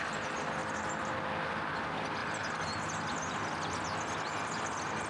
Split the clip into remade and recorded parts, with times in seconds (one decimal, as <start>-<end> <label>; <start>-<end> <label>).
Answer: 0.0-0.6 recorded; 0.6-1.2 remade; 1.2-5.1 recorded